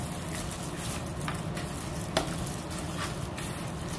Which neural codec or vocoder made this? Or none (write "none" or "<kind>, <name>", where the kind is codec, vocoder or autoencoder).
none